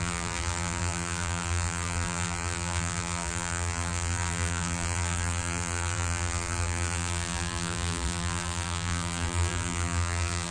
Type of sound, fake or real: fake